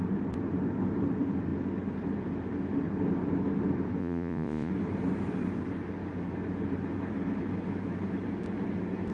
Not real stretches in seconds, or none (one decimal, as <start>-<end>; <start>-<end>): 4.0-4.7